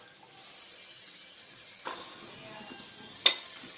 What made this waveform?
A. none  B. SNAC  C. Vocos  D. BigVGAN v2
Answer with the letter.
A